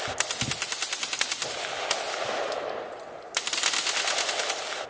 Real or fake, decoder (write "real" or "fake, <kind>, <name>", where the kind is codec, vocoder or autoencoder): real